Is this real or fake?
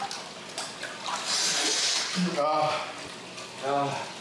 real